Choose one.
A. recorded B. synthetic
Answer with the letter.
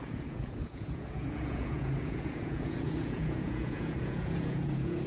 B